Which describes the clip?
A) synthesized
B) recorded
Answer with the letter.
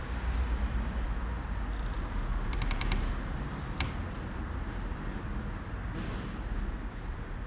A